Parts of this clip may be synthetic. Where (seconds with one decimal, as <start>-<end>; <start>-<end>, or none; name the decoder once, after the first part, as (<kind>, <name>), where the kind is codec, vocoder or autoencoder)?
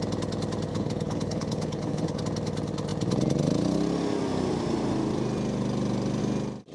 0.7-2.2 (codec, HILCodec)